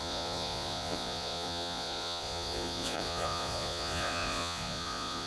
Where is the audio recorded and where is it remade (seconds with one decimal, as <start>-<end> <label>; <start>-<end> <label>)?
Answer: 0.0-5.3 remade